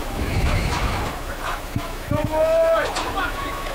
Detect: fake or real fake